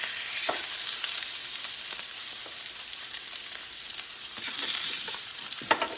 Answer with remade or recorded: remade